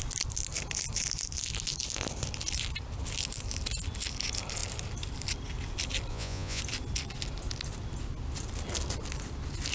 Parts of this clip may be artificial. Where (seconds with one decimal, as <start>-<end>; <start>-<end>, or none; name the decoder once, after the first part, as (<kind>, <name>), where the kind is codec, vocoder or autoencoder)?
6.1-6.6 (vocoder, Vocos)